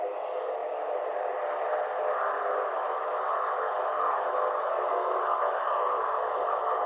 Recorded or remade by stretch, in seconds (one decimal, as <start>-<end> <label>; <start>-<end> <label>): 0.0-4.7 recorded; 4.7-5.2 remade; 5.2-6.9 recorded